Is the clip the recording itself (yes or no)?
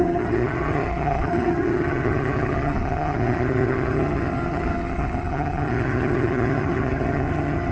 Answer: no